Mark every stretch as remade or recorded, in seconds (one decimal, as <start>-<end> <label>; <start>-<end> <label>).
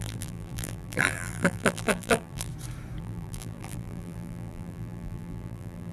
0.0-2.5 remade; 2.5-3.0 recorded; 3.0-5.9 remade